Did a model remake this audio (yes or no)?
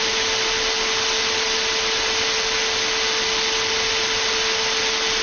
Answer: no